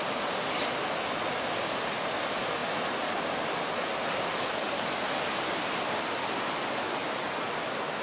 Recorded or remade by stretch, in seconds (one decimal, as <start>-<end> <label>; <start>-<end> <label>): 0.0-8.0 recorded